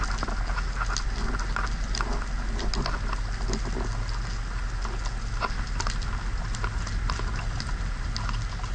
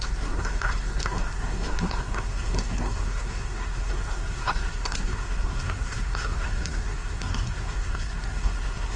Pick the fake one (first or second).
second